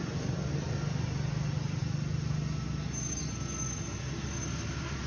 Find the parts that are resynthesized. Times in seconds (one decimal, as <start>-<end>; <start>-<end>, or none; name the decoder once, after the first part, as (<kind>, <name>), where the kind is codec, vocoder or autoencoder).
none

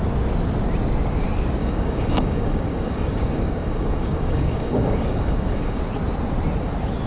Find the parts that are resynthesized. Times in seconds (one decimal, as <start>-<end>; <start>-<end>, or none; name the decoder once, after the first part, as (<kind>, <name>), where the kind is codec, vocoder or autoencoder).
1.6-5.8 (codec, DAC)

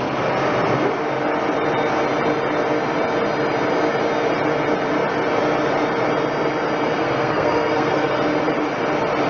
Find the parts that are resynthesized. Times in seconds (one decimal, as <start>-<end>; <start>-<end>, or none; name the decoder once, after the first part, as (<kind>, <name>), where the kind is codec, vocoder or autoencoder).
7.0-8.1 (codec, SNAC)